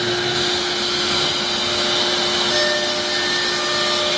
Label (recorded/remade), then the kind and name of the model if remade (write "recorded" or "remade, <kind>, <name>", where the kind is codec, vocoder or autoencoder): recorded